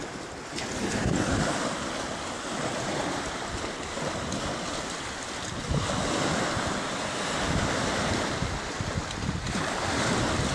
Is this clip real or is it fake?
real